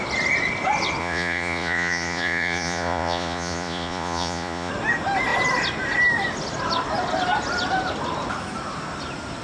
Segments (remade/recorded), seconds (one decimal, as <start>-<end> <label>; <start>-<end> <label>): 0.0-1.0 recorded; 1.0-4.7 remade; 4.7-9.4 recorded